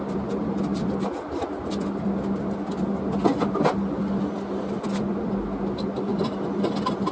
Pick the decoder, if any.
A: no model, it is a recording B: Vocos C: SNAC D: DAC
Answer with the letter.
A